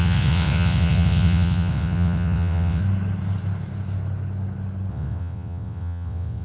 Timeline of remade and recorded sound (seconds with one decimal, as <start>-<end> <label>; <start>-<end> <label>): 0.0-2.8 remade; 2.8-4.9 recorded; 4.9-6.4 remade